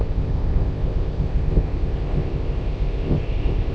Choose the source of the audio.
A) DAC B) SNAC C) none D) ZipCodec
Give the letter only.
D